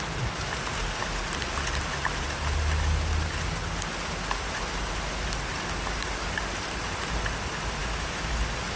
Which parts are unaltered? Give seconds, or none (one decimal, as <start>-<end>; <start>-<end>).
0.0-7.8; 8.3-8.8